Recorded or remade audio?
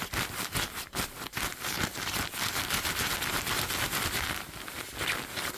recorded